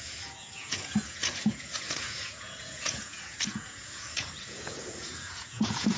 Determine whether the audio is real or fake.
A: fake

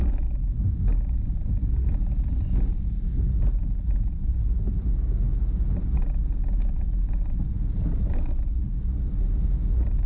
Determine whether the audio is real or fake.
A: real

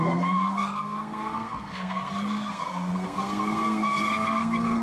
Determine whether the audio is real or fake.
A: fake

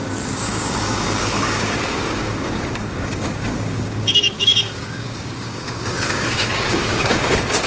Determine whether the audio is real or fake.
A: fake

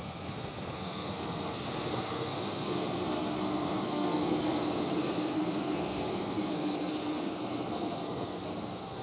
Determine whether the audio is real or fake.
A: fake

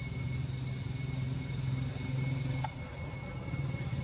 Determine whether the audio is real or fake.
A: real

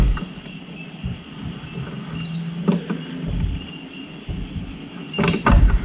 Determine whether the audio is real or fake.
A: fake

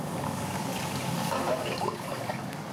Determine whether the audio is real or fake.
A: fake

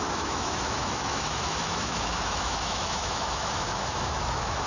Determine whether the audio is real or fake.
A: fake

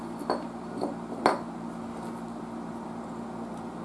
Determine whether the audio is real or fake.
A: real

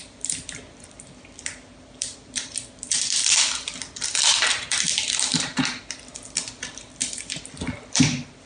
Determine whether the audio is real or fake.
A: fake